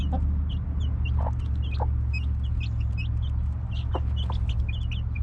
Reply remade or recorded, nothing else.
recorded